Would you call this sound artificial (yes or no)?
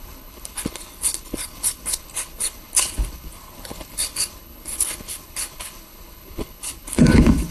yes